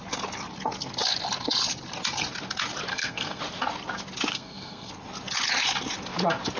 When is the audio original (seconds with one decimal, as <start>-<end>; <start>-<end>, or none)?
0.0-2.9; 3.4-4.3; 4.9-6.6